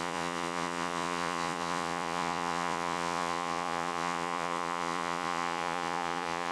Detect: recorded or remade remade